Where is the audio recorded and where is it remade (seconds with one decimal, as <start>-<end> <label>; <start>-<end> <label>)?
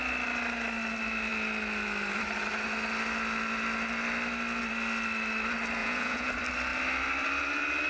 0.0-5.8 recorded; 5.8-6.3 remade; 6.3-7.9 recorded